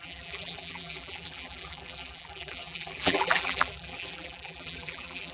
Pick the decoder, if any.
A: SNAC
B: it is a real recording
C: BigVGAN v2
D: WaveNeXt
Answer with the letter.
C